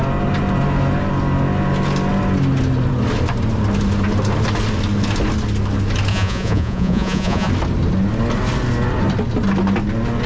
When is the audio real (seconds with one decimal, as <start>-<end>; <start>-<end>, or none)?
0.0-6.1; 7.5-10.3